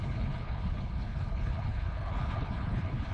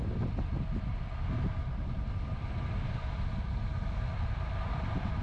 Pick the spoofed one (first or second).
first